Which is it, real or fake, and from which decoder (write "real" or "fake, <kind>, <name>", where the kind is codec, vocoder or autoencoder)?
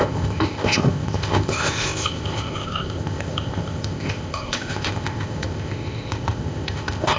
fake, codec, ZipCodec